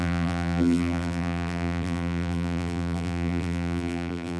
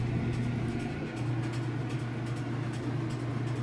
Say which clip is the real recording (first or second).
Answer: second